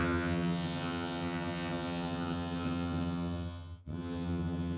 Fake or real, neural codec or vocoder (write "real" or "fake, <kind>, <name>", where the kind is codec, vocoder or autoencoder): fake, vocoder, HiFi-GAN